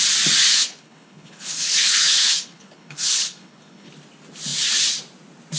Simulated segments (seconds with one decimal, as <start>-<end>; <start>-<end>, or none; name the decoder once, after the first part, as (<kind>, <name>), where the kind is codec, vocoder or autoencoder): 0.5-3.9 (codec, HILCodec)